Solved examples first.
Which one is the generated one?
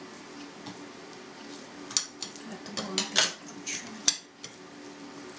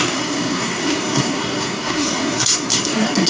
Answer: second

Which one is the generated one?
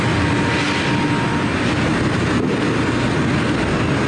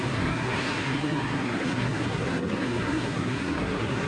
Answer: second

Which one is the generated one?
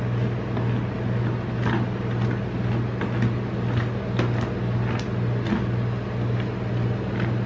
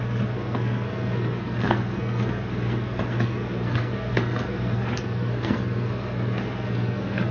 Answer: second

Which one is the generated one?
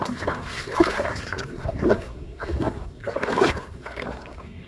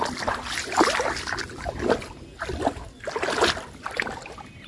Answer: first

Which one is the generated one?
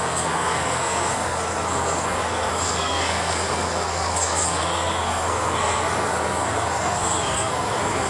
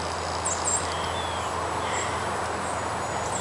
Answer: first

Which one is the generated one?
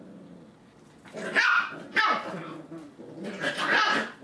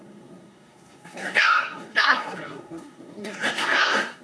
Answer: second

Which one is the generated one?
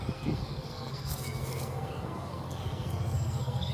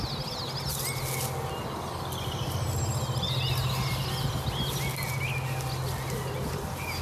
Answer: first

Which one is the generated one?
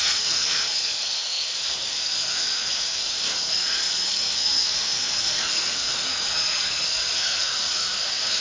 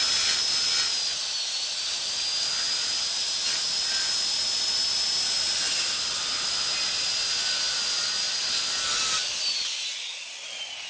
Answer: first